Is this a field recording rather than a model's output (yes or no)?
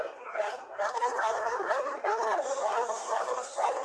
no